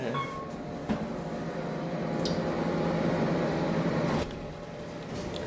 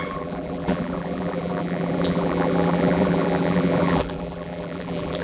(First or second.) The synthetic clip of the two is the second